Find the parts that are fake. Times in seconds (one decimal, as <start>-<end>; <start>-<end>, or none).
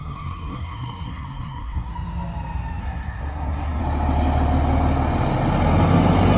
0.0-1.9; 2.8-3.8